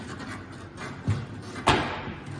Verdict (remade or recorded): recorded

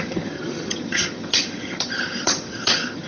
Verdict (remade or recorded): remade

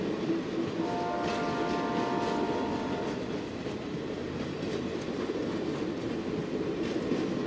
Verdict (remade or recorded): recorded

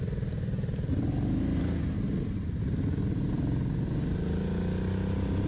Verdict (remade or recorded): recorded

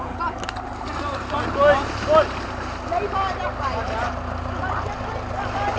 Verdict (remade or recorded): recorded